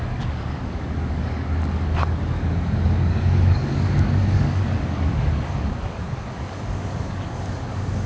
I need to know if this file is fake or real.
fake